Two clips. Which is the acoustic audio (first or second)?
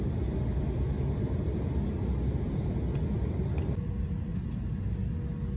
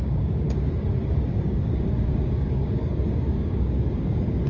first